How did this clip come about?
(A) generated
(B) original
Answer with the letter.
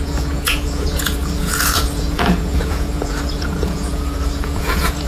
A